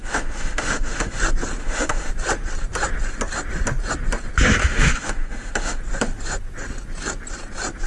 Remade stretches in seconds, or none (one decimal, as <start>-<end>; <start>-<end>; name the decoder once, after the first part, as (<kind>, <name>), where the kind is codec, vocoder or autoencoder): 0.0-1.2 (autoencoder, DAC-VAE); 1.6-2.1; 4.6-5.8